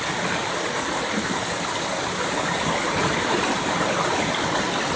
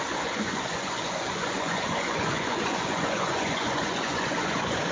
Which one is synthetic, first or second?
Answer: second